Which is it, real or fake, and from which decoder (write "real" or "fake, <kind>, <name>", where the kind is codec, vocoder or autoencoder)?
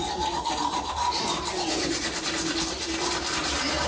real